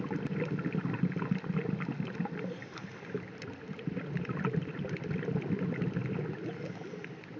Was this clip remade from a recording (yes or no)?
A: no